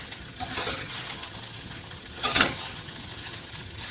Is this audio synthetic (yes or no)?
yes